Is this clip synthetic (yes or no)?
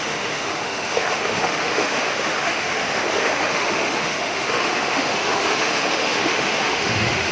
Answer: yes